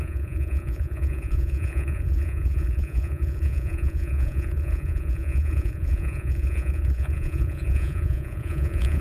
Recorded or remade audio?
remade